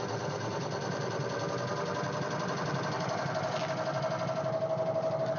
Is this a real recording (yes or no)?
yes